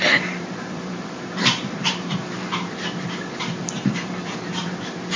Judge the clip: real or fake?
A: fake